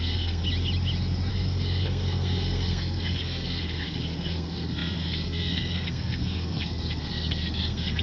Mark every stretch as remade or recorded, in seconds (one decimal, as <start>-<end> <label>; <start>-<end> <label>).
0.0-0.4 remade; 0.4-1.3 recorded; 1.3-8.0 remade